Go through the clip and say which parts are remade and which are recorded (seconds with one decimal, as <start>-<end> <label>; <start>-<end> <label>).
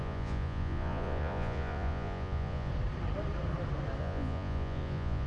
0.0-2.7 remade; 2.7-4.0 recorded; 4.0-5.3 remade